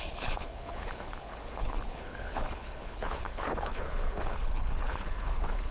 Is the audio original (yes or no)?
no